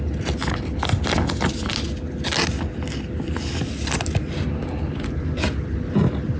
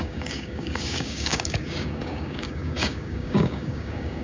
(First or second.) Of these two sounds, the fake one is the second